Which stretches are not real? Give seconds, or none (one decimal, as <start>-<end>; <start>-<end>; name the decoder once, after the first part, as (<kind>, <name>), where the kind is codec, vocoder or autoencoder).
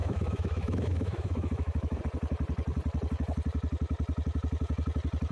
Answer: 0.0-2.0 (autoencoder, DAC-VAE)